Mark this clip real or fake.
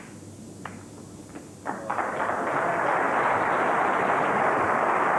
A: real